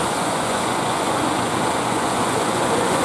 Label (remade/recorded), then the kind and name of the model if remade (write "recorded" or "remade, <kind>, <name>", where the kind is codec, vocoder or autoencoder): remade, vocoder, Vocos